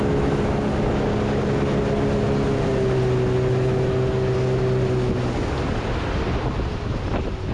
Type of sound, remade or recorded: recorded